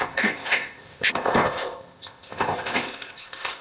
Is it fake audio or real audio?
fake